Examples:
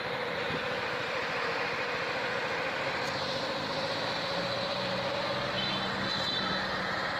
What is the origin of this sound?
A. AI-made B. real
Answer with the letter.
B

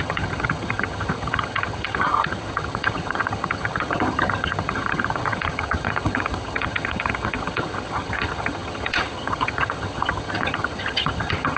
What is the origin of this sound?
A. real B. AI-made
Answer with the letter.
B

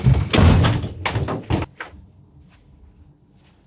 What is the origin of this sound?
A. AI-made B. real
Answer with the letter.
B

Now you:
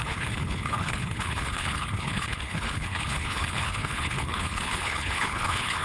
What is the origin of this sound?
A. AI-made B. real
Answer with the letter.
A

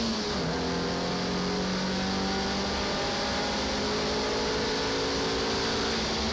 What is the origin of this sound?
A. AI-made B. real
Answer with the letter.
B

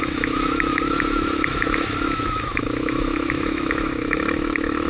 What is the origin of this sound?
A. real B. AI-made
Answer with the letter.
B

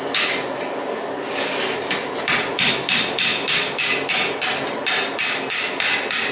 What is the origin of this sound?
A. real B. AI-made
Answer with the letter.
A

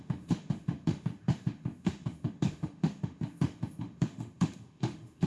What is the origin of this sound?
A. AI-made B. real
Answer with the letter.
A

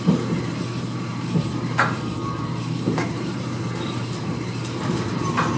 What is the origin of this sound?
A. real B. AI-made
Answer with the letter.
B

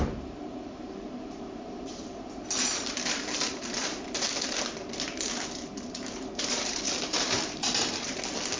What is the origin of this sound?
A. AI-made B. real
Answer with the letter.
A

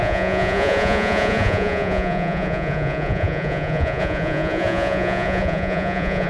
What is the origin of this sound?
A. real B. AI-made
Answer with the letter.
B